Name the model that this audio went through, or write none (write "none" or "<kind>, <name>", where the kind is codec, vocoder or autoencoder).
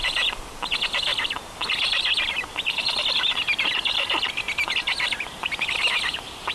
none